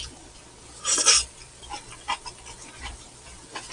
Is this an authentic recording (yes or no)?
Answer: no